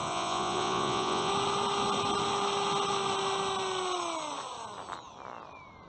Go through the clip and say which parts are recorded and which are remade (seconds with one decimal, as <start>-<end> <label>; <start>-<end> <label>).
0.0-1.3 remade; 1.3-5.9 recorded